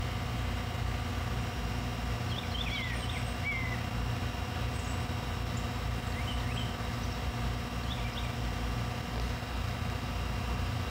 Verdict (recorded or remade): recorded